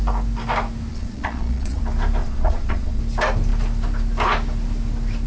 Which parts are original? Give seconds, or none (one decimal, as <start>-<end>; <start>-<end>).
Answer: 0.0-0.9; 1.8-2.2; 3.0-5.3